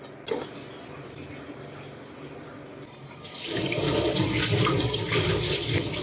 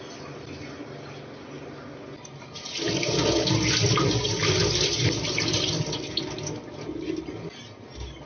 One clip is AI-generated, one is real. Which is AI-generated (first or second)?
first